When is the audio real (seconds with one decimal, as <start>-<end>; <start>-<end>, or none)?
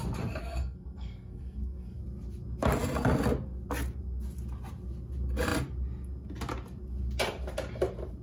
0.0-0.4; 2.0-8.2